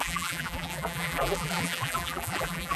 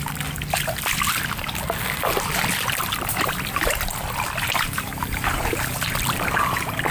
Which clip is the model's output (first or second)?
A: first